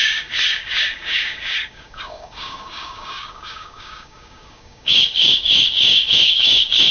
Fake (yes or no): yes